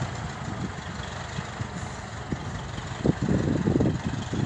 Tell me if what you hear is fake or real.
real